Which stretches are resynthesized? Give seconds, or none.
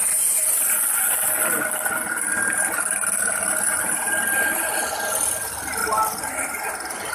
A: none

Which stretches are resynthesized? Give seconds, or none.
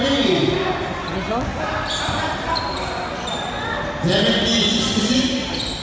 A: none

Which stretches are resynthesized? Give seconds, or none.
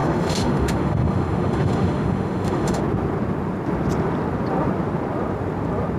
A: 0.0-2.8 (autoencoder, DAC-VAE)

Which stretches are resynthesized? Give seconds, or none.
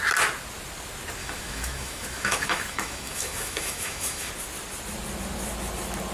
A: 1.2-4.3 (autoencoder, DAC-VAE)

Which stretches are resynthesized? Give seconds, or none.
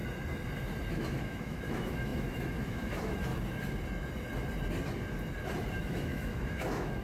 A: 0.9-3.3 (autoencoder, DAC-VAE); 5.8-7.0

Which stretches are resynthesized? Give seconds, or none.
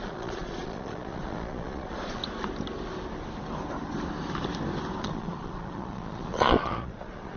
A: 0.0-2.2 (vocoder, Vocos); 5.0-7.4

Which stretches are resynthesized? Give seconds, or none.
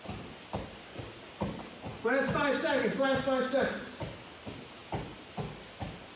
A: none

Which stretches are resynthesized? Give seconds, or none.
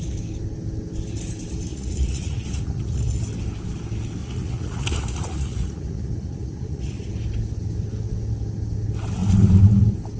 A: 1.7-3.2 (vocoder, Vocos); 4.2-7.1